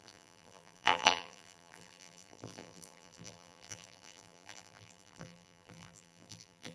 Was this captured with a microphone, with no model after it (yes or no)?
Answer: no